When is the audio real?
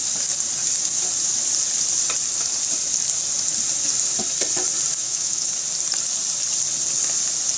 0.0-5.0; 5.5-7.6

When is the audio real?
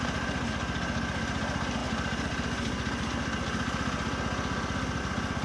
0.0-5.4